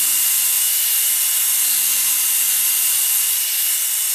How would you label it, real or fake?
real